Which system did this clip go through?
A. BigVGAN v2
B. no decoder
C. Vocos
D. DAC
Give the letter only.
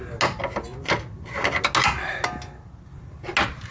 B